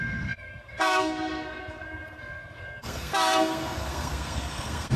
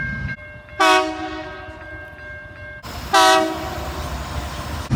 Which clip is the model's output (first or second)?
first